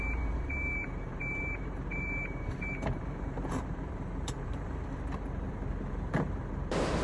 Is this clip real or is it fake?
fake